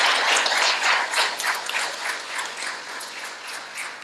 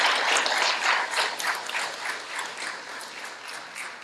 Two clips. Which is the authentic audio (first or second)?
second